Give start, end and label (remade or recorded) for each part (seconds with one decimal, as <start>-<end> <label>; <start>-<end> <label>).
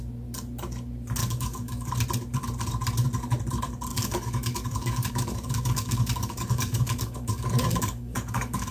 0.0-1.2 recorded; 1.2-1.9 remade; 1.9-3.9 recorded; 3.9-8.7 remade